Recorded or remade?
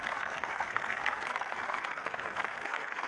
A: remade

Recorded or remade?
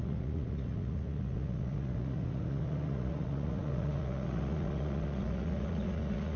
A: remade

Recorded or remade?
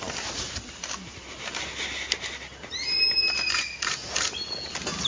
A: recorded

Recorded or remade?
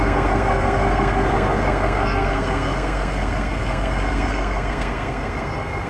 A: remade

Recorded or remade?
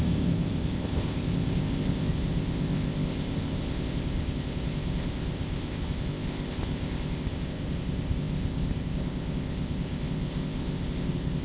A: remade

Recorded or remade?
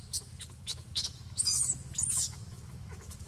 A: remade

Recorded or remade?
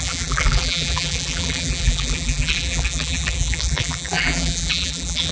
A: remade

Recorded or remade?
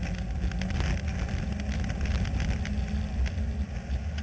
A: recorded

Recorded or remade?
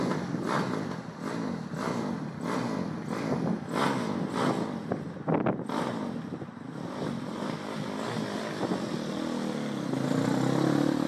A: recorded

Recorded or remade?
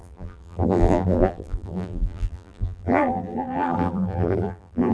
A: remade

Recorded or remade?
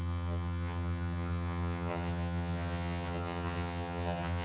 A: remade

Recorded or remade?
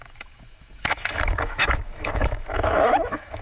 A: remade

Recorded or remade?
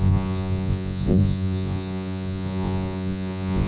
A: remade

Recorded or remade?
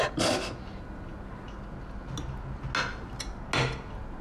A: recorded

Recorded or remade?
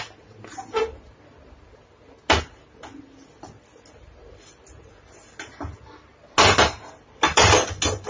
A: recorded